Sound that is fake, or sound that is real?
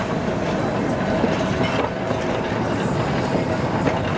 real